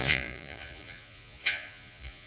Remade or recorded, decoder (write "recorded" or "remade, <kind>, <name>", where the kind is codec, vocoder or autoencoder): remade, vocoder, Vocos